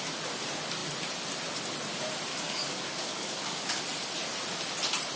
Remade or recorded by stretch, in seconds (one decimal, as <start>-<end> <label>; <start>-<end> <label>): 0.0-2.3 recorded; 2.3-3.8 remade; 3.8-5.2 recorded